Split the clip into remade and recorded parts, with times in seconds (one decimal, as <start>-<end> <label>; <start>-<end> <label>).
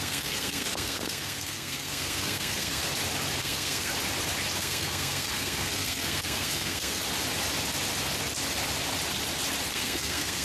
0.0-2.8 remade; 2.8-3.4 recorded; 3.4-3.9 remade; 3.9-4.6 recorded; 4.6-7.0 remade; 7.0-9.7 recorded; 9.7-10.4 remade